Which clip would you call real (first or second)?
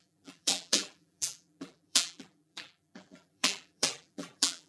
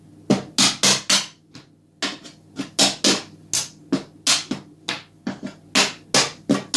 second